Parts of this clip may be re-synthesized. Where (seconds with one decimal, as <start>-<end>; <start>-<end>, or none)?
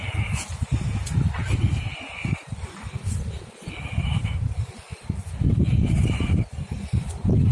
none